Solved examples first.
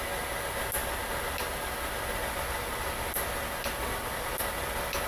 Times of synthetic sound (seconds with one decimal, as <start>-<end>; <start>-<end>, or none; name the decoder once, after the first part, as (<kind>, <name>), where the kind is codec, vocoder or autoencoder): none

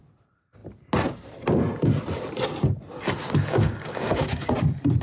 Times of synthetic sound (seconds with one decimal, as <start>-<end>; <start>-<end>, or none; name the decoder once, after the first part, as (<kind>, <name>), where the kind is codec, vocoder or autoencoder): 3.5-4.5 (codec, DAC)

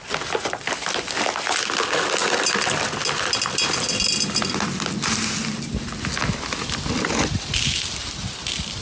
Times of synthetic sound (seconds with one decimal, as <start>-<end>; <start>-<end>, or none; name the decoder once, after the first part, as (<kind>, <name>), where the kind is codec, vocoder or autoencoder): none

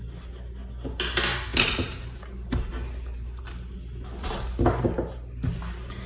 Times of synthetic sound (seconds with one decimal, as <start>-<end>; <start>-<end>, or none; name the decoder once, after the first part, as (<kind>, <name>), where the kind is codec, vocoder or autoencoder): none

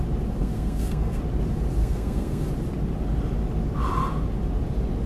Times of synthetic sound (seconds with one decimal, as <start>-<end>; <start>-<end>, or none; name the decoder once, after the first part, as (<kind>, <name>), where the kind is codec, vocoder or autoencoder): 0.4-1.2 (codec, SNAC); 1.8-2.5